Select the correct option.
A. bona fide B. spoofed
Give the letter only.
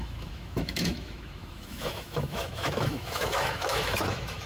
B